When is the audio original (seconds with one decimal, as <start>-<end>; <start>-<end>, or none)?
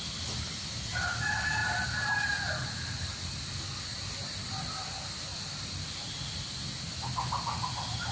0.0-1.6; 3.1-8.1